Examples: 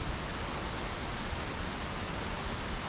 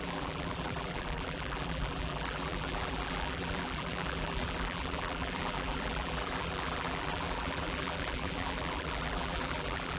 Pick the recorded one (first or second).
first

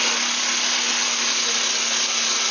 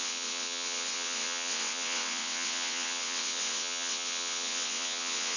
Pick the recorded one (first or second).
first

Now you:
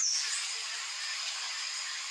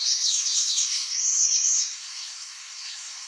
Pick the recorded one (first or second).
first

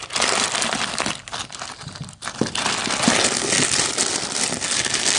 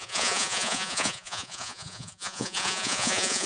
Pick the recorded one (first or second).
first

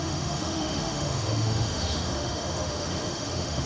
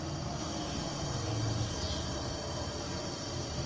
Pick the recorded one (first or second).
second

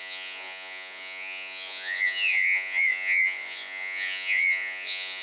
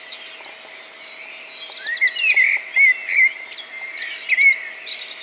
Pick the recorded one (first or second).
second